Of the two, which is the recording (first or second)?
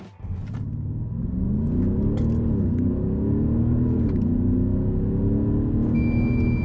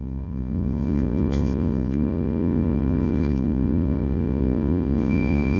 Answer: first